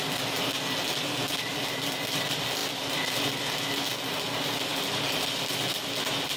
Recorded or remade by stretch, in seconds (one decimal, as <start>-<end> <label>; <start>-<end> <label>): 0.0-6.4 recorded